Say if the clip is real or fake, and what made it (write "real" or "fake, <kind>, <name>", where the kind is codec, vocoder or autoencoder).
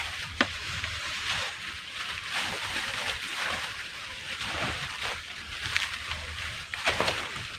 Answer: fake, vocoder, BigVGAN v2